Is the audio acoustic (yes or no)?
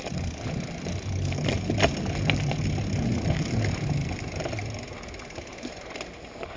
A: yes